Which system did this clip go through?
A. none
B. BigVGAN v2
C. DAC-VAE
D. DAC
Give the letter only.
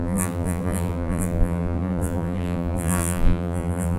B